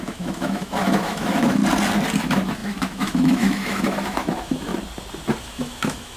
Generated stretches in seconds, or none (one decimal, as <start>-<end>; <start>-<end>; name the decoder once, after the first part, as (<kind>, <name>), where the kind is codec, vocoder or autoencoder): 0.0-1.6 (autoencoder, DAC-VAE); 2.2-4.7; 5.4-6.2